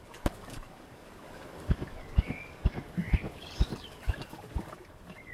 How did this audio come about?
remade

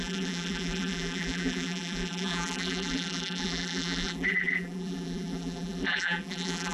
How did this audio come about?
remade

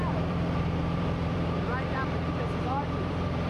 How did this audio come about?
remade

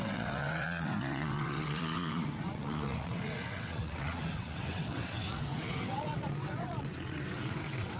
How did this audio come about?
remade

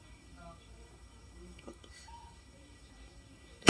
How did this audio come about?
remade